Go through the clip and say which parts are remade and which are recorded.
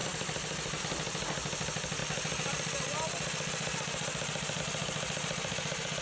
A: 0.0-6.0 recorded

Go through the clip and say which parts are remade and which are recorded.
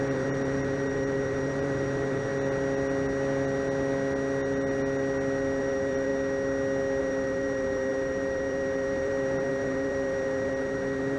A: 0.0-2.3 remade; 2.3-5.6 recorded; 5.6-6.1 remade; 6.1-7.0 recorded; 7.0-11.2 remade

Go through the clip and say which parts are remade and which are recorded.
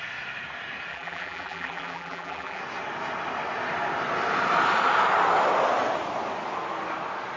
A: 0.0-0.9 recorded; 0.9-2.6 remade; 2.6-7.4 recorded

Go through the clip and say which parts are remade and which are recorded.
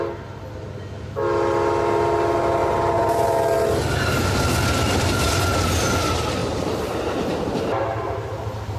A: 0.0-2.6 recorded; 2.6-3.2 remade; 3.2-6.4 recorded; 6.4-8.8 remade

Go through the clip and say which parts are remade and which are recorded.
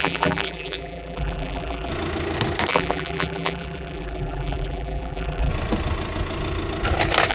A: 0.0-1.9 remade; 1.9-2.7 recorded; 2.7-5.5 remade; 5.5-7.3 recorded